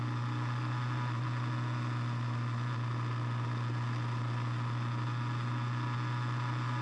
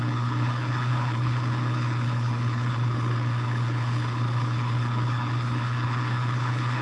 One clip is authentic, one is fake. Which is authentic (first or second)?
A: first